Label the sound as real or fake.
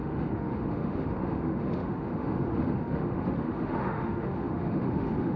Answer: fake